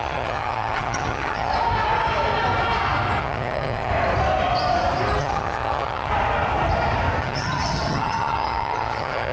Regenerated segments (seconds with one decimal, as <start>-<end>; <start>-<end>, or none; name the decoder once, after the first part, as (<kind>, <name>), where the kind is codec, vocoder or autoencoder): 0.0-1.5 (vocoder, HiFi-GAN); 3.2-3.9; 5.2-6.1; 7.2-9.3